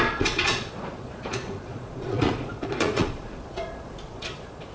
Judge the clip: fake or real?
fake